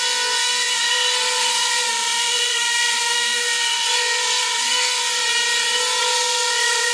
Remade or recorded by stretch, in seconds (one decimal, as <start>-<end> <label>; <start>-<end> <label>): 0.0-5.0 remade; 5.0-6.0 recorded; 6.0-6.9 remade